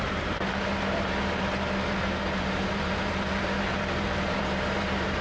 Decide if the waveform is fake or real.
fake